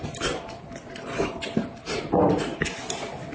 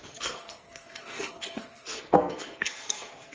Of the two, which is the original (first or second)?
first